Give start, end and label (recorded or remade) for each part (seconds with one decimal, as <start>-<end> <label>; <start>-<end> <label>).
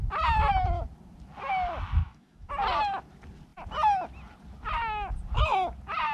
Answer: 0.0-2.0 recorded; 2.0-2.5 remade; 2.5-6.1 recorded